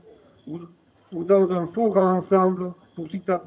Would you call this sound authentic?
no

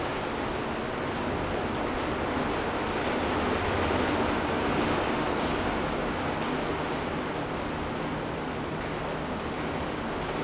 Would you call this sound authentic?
yes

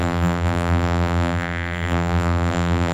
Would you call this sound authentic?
no